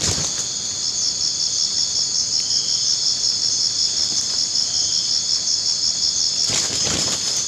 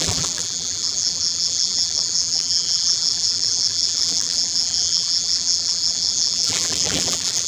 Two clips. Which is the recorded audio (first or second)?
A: first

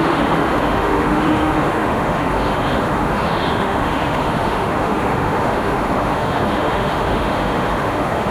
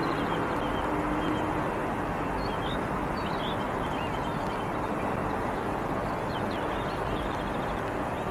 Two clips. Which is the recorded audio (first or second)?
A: second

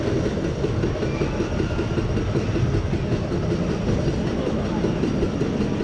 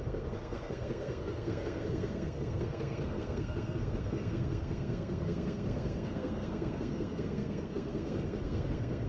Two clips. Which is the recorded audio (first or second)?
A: first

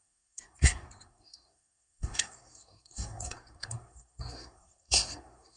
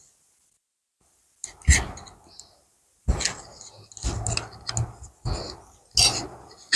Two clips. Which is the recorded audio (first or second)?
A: second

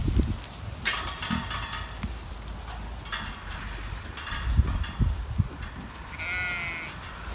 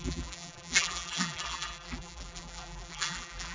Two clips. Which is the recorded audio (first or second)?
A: first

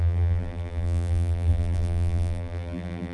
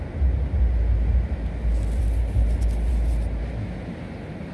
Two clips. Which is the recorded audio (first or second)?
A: second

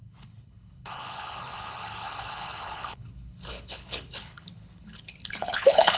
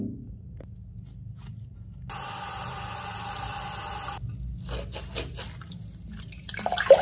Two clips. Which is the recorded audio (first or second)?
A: second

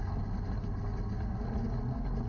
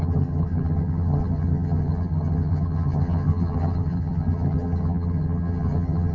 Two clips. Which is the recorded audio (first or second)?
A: first